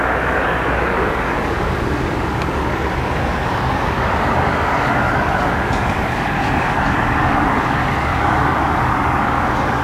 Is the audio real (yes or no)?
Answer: no